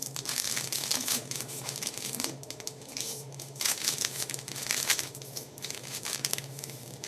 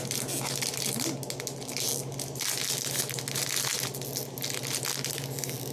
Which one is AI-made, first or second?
first